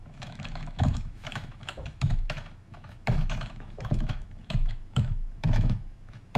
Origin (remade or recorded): remade